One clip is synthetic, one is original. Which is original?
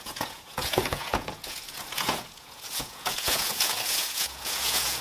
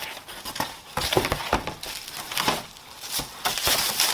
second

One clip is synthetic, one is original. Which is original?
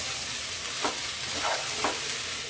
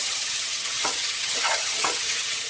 first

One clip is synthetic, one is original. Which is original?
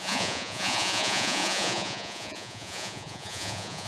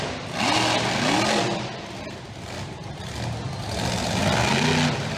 second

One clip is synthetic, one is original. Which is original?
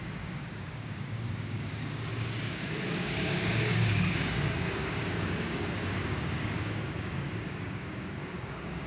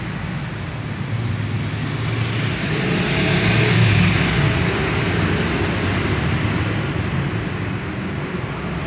second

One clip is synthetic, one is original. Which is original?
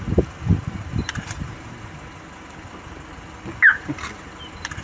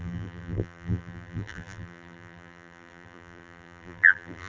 first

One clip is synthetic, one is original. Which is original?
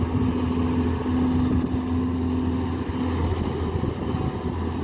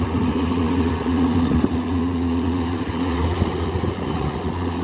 first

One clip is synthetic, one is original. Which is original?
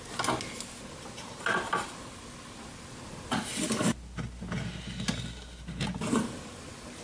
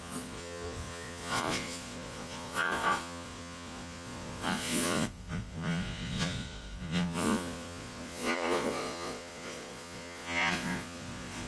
first